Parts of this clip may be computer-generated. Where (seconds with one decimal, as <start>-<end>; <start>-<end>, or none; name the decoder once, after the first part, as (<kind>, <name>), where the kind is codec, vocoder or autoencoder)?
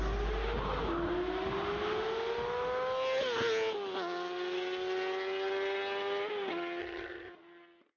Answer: 6.8-7.3 (vocoder, HiFi-GAN)